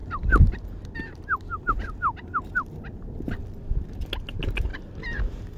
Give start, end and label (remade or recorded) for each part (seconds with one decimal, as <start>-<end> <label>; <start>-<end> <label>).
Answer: 0.0-5.6 recorded